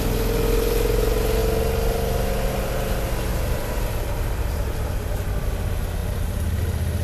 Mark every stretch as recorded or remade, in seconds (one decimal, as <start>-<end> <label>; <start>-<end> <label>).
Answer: 0.0-3.3 recorded; 3.3-5.1 remade; 5.1-6.0 recorded; 6.0-6.6 remade; 6.6-7.0 recorded